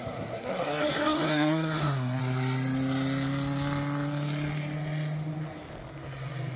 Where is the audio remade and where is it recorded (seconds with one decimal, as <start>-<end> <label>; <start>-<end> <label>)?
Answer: 0.0-2.2 remade; 2.2-6.6 recorded